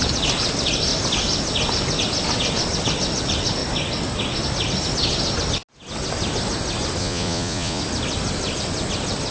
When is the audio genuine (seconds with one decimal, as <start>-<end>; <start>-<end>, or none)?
0.0-7.0; 7.8-9.3